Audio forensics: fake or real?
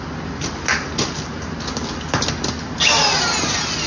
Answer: real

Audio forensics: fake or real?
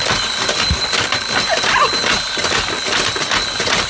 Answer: real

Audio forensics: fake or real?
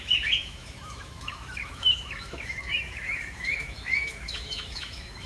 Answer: fake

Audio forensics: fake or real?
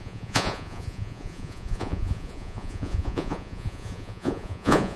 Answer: fake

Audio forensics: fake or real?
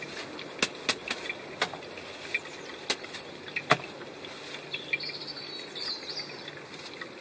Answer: real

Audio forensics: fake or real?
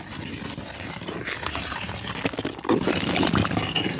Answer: real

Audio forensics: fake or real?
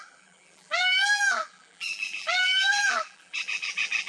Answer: fake